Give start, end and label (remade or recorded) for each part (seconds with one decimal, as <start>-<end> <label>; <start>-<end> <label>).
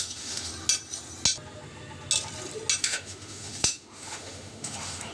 0.0-0.5 remade; 0.5-2.8 recorded; 2.8-5.1 remade